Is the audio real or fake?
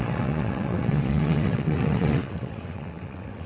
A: fake